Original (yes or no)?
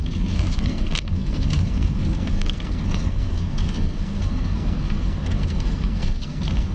no